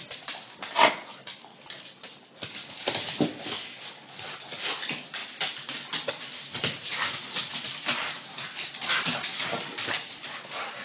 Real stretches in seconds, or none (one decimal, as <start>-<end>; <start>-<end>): 5.2-6.1